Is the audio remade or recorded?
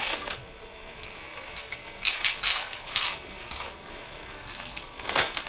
remade